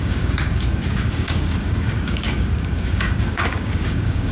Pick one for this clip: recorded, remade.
remade